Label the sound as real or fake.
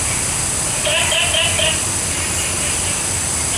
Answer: real